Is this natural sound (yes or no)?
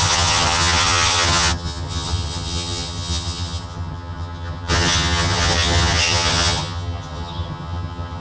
no